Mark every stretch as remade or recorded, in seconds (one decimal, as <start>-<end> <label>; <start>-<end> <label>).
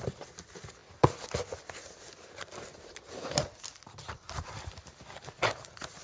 0.0-6.0 recorded